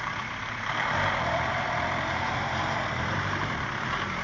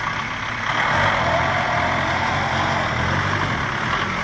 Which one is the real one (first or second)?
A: second